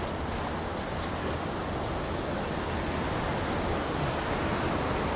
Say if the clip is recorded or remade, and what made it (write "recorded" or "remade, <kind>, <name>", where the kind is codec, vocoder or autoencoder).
recorded